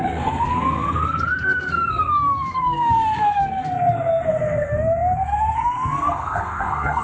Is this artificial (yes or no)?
yes